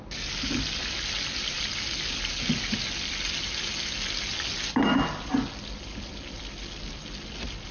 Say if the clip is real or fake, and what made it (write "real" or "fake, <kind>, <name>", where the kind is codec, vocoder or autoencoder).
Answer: real